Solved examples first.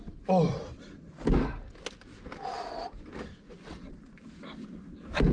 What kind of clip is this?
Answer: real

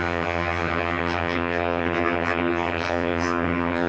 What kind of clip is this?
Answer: fake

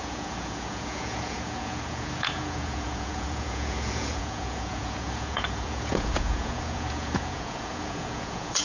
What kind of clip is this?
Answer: fake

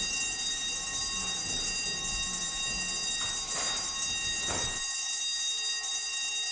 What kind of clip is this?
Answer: real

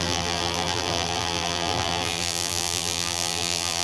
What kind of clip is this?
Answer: fake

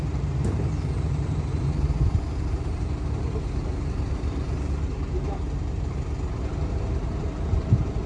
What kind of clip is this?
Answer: fake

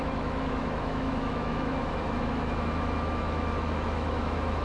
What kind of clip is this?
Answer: fake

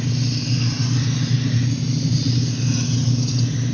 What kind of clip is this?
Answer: real